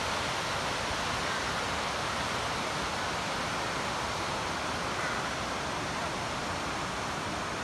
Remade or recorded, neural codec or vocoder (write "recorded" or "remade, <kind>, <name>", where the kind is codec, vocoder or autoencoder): recorded